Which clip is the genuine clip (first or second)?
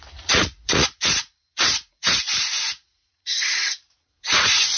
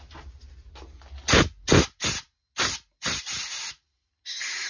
second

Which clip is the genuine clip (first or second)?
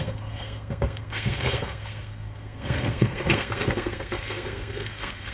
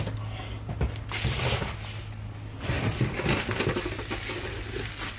second